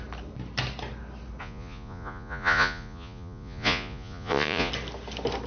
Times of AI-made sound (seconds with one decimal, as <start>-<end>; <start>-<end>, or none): 1.4-4.7